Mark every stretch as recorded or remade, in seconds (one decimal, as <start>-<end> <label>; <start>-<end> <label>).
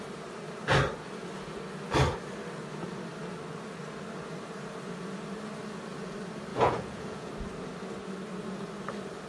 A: 0.0-6.5 recorded; 6.5-7.3 remade; 7.3-9.3 recorded